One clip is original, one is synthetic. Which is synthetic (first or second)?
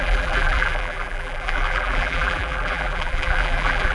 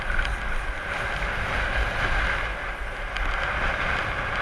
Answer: first